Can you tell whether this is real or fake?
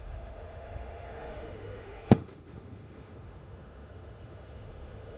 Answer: fake